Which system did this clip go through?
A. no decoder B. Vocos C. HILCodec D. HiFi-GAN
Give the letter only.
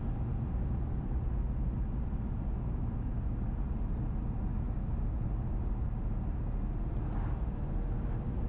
A